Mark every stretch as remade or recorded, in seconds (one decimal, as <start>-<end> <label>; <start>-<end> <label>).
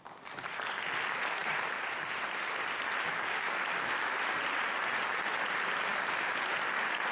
0.0-1.4 recorded; 1.4-4.8 remade; 4.8-7.1 recorded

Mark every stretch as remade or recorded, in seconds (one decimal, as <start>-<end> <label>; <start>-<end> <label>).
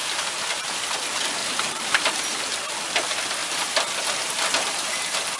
0.0-0.8 remade; 0.8-1.4 recorded; 1.4-2.2 remade; 2.2-5.4 recorded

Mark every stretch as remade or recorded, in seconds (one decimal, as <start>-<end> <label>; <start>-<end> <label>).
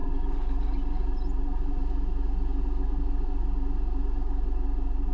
0.0-5.1 recorded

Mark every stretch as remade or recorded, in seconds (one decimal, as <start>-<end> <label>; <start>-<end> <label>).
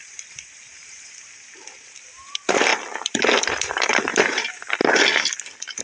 0.0-2.7 remade; 2.7-3.5 recorded; 3.5-4.8 remade; 4.8-5.8 recorded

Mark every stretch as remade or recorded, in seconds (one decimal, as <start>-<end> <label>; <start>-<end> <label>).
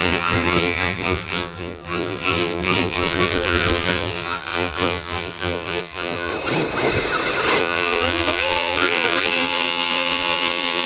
0.0-6.3 remade; 6.3-7.6 recorded; 7.6-10.9 remade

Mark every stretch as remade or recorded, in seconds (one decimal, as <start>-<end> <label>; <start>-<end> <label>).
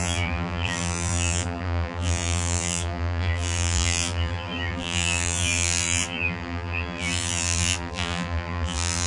0.0-9.1 remade